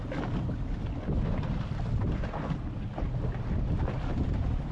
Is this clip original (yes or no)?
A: yes